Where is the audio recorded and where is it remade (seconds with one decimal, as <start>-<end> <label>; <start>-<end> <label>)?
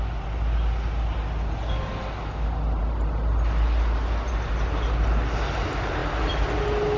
0.0-7.0 recorded